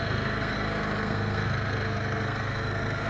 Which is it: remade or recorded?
remade